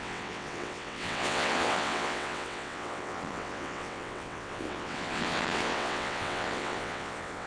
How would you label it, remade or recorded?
remade